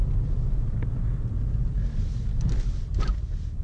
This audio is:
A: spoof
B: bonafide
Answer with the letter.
B